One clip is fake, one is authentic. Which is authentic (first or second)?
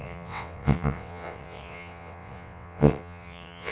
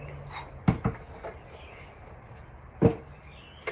second